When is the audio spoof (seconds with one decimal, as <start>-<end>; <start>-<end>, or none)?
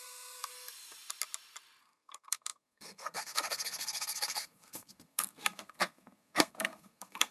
0.0-0.5; 1.8-7.3